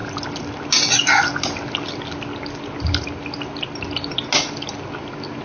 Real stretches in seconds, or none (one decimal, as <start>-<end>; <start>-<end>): 0.0-5.4